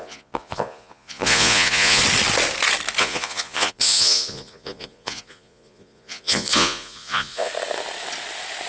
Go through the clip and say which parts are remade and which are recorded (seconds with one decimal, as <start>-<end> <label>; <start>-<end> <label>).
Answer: 0.0-2.0 remade; 2.0-3.0 recorded; 3.0-7.5 remade; 7.5-8.7 recorded